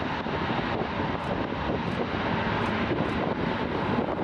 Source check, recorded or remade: recorded